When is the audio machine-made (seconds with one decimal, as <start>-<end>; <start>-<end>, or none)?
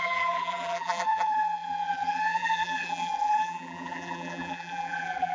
0.0-5.3